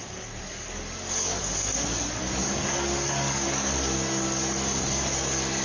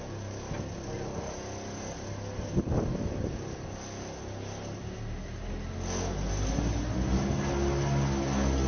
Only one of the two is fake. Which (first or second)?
first